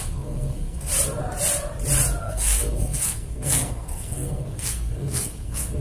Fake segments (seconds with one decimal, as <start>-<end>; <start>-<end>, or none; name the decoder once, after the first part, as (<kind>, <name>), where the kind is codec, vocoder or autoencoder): 0.0-0.9 (codec, SNAC); 2.2-5.8